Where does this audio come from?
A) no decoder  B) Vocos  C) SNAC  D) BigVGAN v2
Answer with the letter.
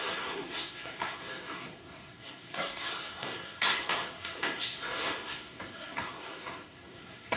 C